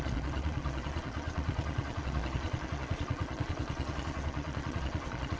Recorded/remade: remade